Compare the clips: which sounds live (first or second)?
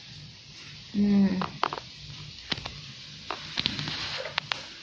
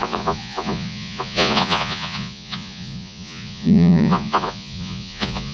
first